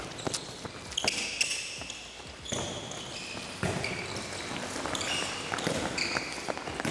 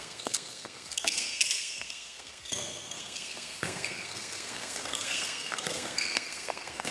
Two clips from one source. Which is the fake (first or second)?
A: second